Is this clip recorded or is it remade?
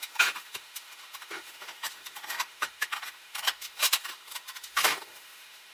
remade